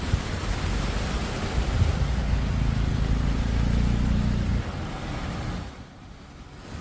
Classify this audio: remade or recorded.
recorded